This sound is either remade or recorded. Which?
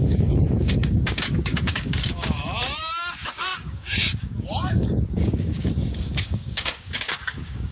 remade